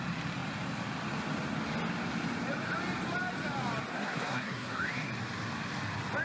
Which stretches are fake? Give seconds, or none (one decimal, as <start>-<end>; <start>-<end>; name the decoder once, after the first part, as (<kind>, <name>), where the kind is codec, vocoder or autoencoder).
3.9-5.1 (codec, SNAC)